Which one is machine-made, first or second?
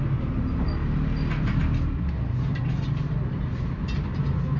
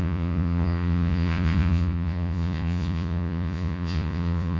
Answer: second